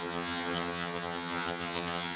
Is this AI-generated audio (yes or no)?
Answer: yes